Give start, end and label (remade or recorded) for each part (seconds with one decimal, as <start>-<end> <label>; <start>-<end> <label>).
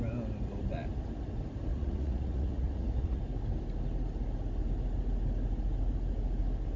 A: 0.0-1.7 recorded; 1.7-3.2 remade; 3.2-6.8 recorded